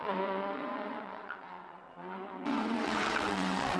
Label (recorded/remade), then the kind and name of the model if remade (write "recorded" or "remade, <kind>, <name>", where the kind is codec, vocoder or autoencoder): remade, vocoder, WaveNeXt